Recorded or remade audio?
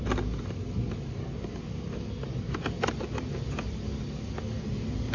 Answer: recorded